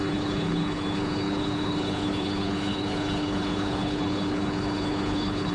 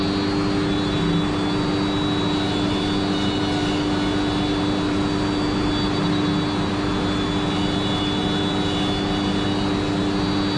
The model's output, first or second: first